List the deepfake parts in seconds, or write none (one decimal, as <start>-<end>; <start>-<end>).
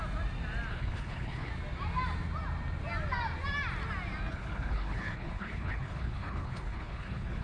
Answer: 0.7-1.5; 4.3-7.4